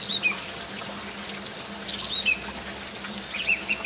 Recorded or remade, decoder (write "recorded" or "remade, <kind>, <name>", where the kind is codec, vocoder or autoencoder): recorded